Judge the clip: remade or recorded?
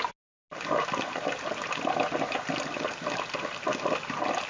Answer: recorded